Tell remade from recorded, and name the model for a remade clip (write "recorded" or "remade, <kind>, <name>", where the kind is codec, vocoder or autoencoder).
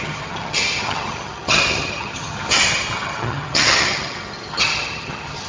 remade, vocoder, HiFi-GAN